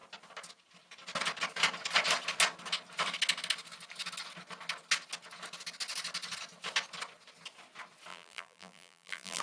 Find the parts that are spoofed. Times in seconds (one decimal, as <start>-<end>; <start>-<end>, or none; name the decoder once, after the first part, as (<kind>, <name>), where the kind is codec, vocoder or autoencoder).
8.1-9.4 (vocoder, BigVGAN v2)